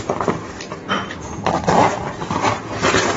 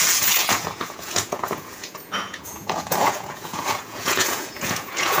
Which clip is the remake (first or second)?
second